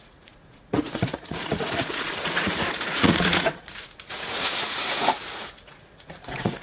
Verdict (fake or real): fake